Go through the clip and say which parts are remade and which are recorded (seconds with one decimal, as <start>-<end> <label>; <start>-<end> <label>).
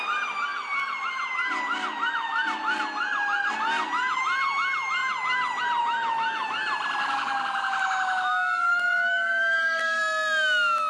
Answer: 0.0-7.0 recorded; 7.0-10.0 remade; 10.0-10.9 recorded